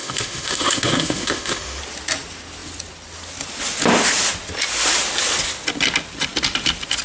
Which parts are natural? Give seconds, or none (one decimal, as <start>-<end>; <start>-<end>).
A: 1.8-7.0